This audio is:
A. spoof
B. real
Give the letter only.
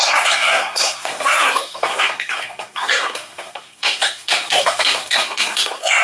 A